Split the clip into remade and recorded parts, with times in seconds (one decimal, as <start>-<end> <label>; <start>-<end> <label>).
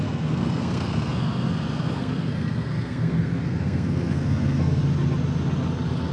0.0-4.8 remade; 4.8-6.1 recorded